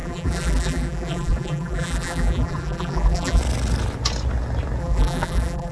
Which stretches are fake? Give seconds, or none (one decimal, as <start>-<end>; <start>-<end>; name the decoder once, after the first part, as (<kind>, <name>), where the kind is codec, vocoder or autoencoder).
0.0-3.4 (vocoder, BigVGAN v2); 4.8-5.7